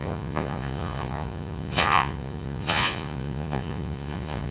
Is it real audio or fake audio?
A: fake